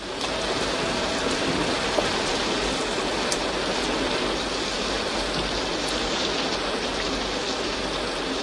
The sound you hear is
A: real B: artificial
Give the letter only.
A